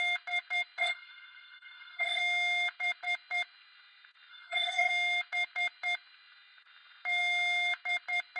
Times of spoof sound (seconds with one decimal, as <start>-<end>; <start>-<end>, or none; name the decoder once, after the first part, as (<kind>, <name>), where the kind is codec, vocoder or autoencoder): 0.8-2.2 (codec, SNAC); 4.3-4.9